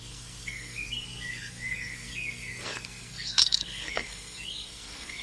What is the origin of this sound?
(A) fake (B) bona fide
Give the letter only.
A